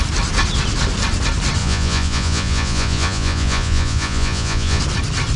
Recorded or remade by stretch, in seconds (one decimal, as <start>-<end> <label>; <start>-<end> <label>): 0.0-1.6 recorded; 1.6-4.8 remade; 4.8-5.4 recorded